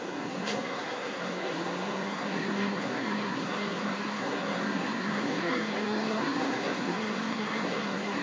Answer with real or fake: fake